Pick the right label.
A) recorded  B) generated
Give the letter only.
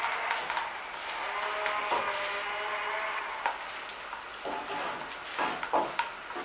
A